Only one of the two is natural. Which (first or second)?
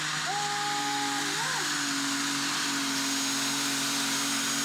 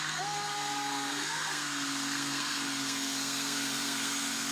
first